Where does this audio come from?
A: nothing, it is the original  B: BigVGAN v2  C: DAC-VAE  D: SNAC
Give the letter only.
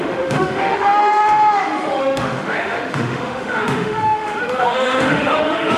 C